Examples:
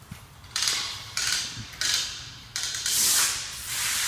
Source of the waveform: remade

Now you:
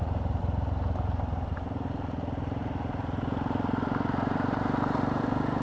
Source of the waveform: remade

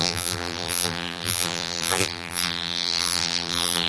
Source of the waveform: remade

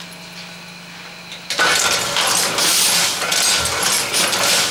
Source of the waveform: recorded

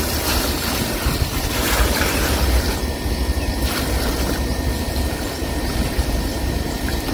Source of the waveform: remade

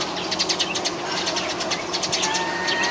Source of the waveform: recorded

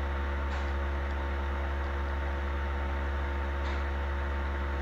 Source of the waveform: recorded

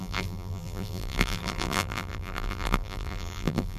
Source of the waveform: remade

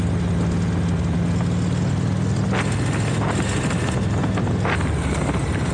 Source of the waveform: recorded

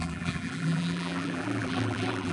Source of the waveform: remade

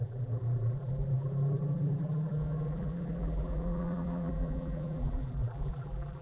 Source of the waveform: remade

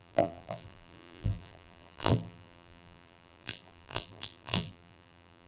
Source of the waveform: remade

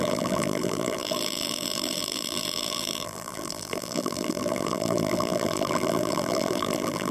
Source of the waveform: remade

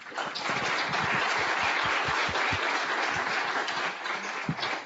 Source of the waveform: recorded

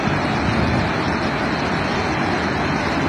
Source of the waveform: recorded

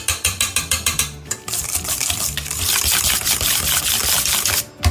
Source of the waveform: recorded